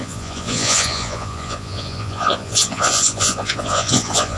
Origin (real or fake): fake